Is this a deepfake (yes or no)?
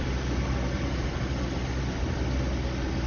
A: no